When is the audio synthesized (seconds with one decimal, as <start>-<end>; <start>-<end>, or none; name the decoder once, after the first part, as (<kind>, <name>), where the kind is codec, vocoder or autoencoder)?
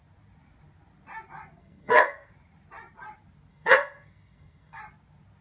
1.6-2.3 (codec, SNAC); 3.5-4.8